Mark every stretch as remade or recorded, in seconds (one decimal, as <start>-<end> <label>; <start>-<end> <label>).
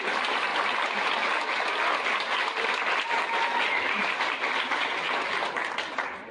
0.0-6.3 recorded